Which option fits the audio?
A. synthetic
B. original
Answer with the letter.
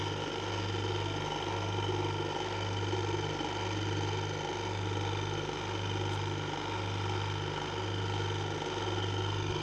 B